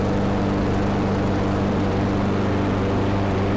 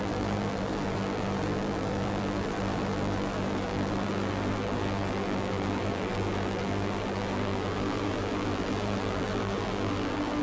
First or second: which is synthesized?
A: second